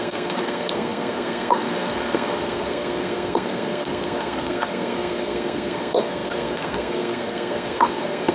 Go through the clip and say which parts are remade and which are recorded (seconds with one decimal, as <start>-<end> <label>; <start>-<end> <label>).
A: 0.0-8.3 remade